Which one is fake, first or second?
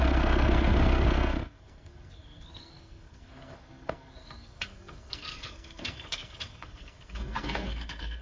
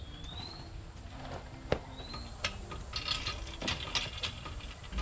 first